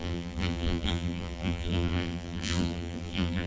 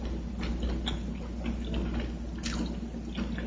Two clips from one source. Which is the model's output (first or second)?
first